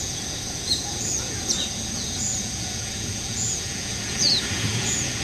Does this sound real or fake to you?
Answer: fake